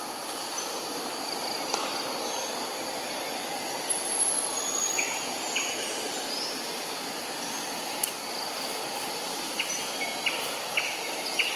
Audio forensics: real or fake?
real